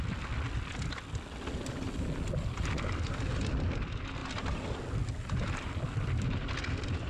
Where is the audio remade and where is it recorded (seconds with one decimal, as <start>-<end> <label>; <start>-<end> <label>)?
0.0-7.1 recorded